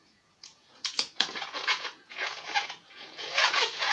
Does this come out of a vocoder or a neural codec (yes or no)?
yes